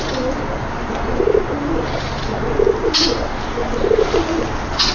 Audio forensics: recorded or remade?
recorded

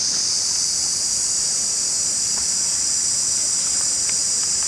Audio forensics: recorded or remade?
recorded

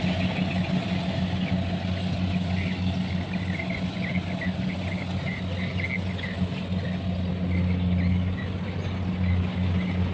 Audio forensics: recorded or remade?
recorded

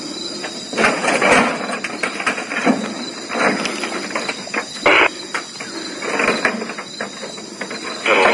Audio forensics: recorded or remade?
recorded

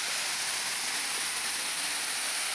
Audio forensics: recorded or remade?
recorded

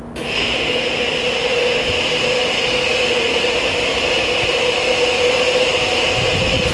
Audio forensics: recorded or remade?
recorded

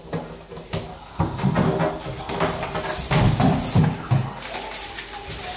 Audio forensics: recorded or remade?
recorded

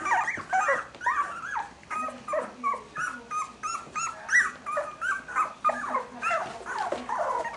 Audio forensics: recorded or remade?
recorded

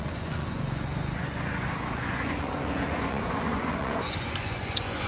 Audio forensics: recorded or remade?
remade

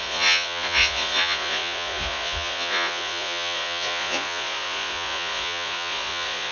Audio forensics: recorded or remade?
remade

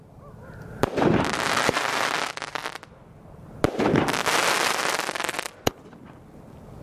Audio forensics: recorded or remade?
recorded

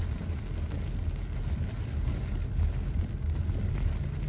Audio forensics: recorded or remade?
recorded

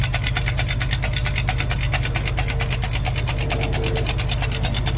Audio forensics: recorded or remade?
recorded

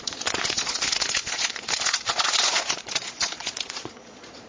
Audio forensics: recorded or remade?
remade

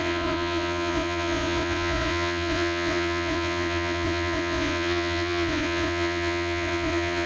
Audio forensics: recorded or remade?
remade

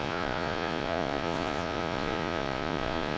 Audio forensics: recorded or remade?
remade